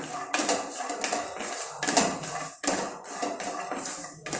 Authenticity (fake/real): real